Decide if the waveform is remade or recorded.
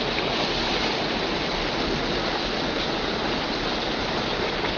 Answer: recorded